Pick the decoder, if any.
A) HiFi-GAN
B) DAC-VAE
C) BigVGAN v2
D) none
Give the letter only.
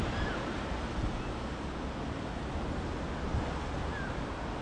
D